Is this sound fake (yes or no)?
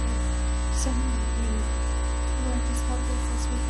no